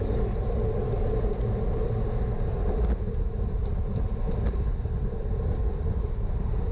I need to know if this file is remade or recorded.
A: recorded